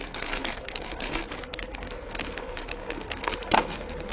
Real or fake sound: fake